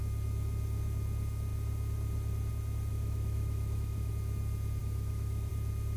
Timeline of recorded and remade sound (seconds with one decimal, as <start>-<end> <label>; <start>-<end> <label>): 0.0-2.9 recorded; 2.9-4.1 remade; 4.1-4.8 recorded; 4.8-5.5 remade; 5.5-6.0 recorded